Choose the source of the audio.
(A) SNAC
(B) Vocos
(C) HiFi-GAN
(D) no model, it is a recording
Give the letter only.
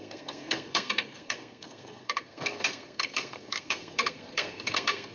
A